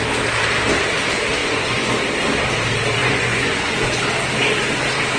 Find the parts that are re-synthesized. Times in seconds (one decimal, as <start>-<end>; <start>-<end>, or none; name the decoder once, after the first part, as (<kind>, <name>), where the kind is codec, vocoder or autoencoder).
1.4-2.0 (vocoder, Vocos); 3.0-4.0